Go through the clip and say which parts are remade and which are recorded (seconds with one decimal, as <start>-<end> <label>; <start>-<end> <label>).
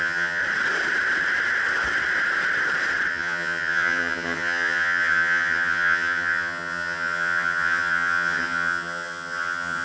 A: 0.0-0.4 remade; 0.4-3.1 recorded; 3.1-9.8 remade